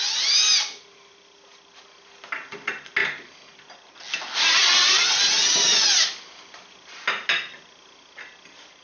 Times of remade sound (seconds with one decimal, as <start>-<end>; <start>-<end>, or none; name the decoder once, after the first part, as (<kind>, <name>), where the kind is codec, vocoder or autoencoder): none